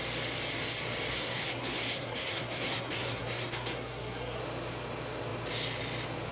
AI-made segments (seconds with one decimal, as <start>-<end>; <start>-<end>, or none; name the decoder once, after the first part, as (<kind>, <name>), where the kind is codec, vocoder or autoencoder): 1.1-4.4 (codec, SNAC)